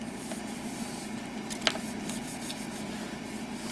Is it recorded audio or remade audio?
recorded